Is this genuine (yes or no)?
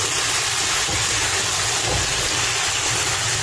yes